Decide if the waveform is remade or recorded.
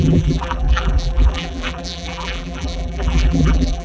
remade